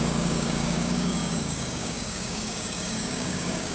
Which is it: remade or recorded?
remade